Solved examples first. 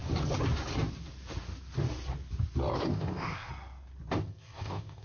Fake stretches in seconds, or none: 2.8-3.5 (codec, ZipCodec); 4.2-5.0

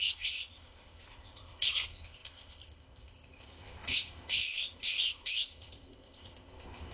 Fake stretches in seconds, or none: 0.0-6.9 (codec, ZipCodec)

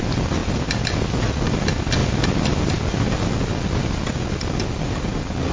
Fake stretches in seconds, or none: none

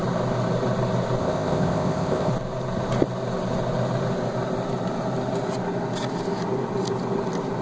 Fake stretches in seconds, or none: 1.2-2.3 (codec, ZipCodec)

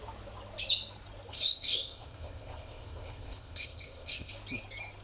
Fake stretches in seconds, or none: 1.3-4.3 (codec, ZipCodec)